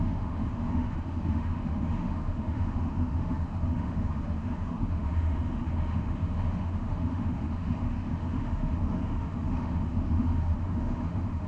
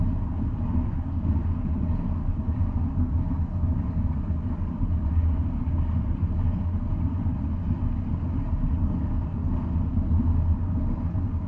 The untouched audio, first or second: second